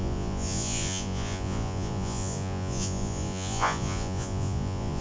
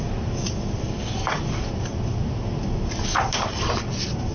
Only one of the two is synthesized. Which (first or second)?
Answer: first